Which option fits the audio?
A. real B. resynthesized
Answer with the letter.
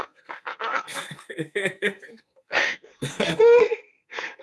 B